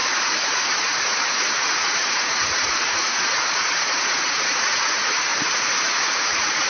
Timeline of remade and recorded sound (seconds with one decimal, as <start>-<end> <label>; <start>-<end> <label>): 0.0-6.7 remade